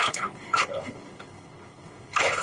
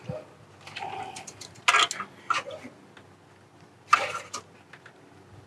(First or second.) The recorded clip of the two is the second